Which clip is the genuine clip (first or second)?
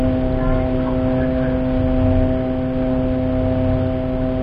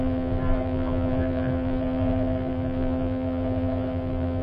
first